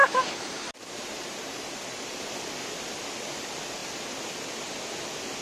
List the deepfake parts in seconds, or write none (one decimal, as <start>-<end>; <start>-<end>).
0.0-2.2